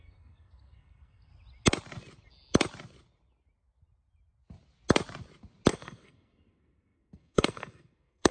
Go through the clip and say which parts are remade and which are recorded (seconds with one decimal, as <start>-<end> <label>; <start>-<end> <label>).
0.0-1.3 remade; 1.3-5.7 recorded; 5.7-8.3 remade

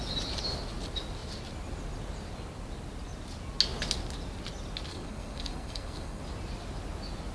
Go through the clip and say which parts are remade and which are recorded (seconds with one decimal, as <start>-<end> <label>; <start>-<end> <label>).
0.0-4.9 recorded; 4.9-6.2 remade; 6.2-7.3 recorded

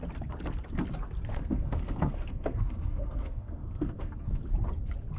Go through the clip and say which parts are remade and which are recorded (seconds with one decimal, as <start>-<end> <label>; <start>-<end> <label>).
0.0-1.3 recorded; 1.3-4.4 remade; 4.4-5.2 recorded

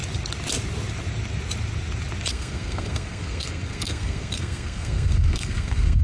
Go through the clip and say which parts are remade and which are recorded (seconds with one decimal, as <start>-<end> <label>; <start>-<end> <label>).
0.0-2.3 recorded; 2.3-6.0 remade

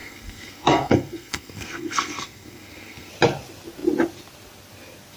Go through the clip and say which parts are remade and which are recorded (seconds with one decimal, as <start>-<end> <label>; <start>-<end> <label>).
0.0-3.1 remade; 3.1-5.2 recorded

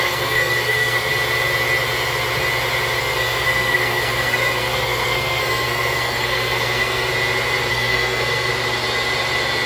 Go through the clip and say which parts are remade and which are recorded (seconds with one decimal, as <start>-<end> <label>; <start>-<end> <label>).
0.0-1.1 remade; 1.1-3.0 recorded; 3.0-7.1 remade; 7.1-7.7 recorded; 7.7-8.5 remade; 8.5-9.7 recorded

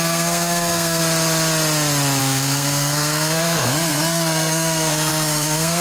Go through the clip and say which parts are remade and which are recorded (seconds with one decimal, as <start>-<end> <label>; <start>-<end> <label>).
0.0-1.0 remade; 1.0-2.2 recorded; 2.2-5.8 remade